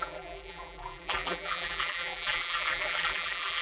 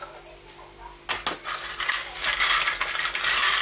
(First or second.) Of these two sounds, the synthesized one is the first